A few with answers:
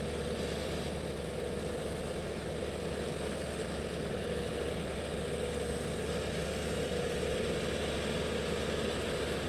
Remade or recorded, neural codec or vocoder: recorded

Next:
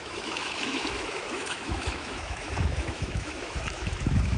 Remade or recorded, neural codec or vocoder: remade, autoencoder, DAC-VAE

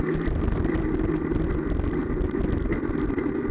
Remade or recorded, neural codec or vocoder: recorded